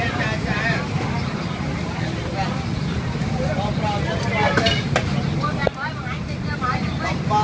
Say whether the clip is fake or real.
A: real